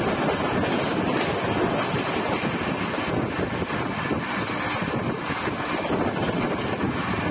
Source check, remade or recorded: recorded